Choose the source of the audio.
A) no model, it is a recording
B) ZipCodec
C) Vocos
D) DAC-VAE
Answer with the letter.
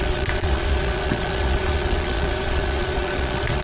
C